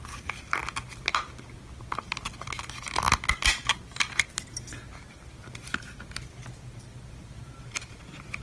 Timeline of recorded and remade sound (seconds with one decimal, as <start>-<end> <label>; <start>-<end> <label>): 0.0-8.4 recorded